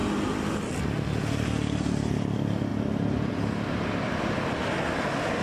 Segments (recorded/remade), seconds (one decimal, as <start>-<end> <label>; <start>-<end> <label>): 0.0-5.4 recorded